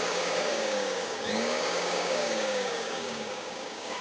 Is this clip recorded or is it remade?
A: remade